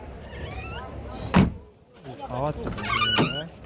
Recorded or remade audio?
recorded